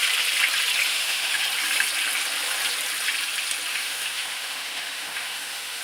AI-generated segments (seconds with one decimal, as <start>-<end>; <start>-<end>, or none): 0.9-1.4; 3.7-5.8